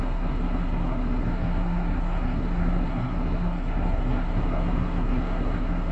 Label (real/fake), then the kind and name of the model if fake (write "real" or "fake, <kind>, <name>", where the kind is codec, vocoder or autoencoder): fake, codec, SNAC